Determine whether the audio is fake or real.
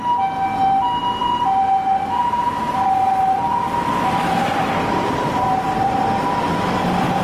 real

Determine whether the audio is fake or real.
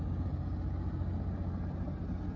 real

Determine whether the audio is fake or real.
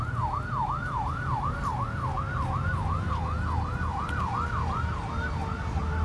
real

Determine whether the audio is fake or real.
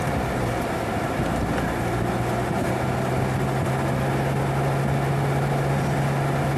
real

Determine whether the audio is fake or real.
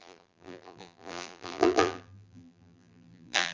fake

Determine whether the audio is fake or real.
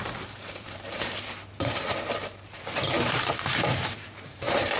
fake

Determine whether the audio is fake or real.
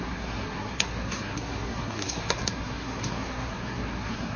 fake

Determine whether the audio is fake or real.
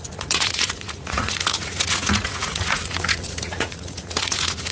fake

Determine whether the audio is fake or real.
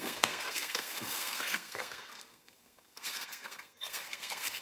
fake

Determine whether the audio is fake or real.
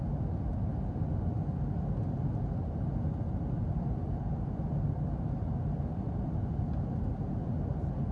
real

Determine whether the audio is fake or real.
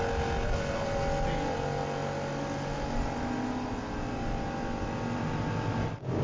real